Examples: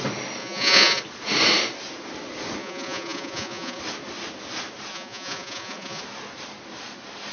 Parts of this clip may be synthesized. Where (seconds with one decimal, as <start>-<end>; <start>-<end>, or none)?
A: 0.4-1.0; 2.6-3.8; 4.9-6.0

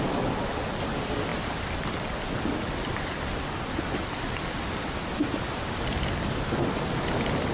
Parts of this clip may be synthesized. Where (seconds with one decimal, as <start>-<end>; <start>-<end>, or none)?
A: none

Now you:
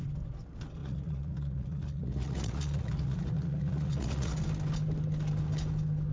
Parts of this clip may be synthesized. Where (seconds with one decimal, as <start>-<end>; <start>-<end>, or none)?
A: 0.8-4.3